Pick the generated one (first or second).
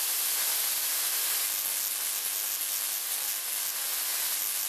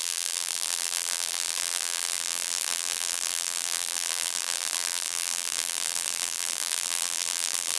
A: second